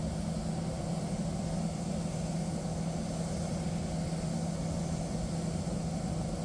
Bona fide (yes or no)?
yes